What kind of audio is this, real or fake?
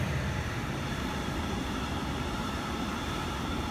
fake